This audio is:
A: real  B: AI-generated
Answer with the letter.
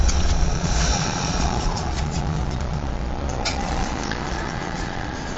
B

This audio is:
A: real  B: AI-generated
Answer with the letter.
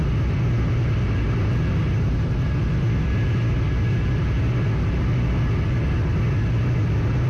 A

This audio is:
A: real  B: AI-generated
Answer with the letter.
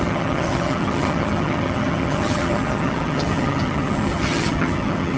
B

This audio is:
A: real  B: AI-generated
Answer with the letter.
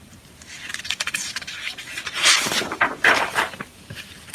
B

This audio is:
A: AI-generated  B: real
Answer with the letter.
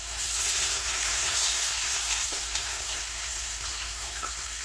A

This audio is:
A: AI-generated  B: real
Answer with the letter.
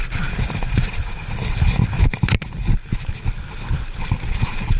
B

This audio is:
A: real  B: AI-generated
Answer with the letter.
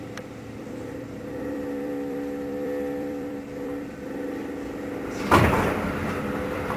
B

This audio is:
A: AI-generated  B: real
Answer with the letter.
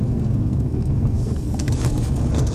A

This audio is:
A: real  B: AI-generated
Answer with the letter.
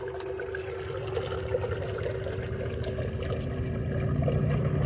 A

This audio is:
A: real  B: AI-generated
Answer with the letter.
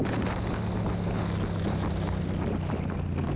A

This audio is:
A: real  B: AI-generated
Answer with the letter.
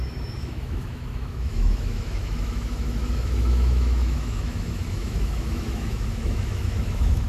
B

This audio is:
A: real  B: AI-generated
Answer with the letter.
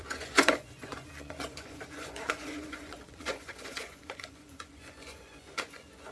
B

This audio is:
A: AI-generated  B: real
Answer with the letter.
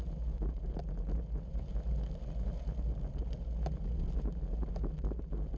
B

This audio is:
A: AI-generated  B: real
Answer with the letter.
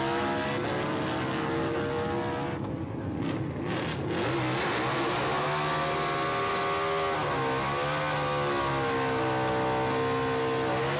B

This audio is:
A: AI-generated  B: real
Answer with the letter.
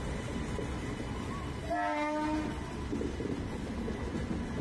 B